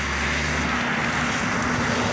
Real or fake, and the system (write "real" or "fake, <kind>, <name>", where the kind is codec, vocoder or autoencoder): real